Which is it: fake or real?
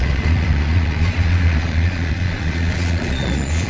fake